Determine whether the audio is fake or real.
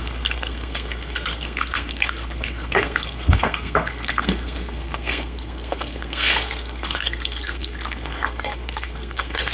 fake